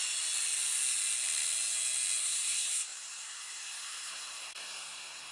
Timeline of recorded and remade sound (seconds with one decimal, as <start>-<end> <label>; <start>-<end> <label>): 0.0-2.2 recorded; 2.2-5.3 remade